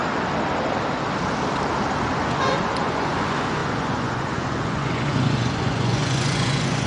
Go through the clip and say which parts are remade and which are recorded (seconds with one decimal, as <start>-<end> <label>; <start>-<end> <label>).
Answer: 0.0-2.1 recorded; 2.1-6.9 remade